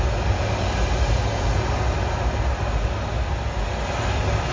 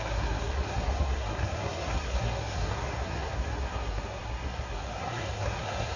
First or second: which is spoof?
second